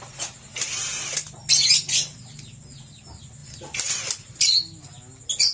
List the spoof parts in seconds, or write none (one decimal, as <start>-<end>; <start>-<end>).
none